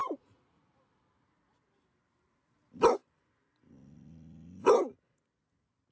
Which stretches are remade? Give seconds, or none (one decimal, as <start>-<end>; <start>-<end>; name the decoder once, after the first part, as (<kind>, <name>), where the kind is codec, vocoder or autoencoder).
0.0-0.6 (vocoder, Vocos)